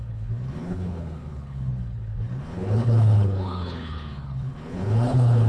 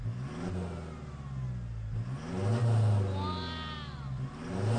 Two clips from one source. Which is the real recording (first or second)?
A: second